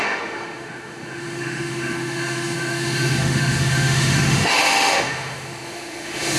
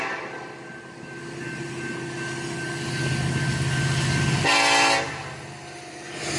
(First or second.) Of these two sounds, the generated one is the first